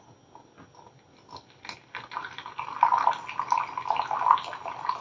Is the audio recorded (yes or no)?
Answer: yes